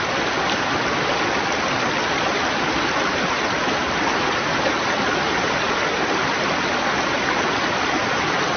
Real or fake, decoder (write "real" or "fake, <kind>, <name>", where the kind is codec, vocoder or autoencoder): real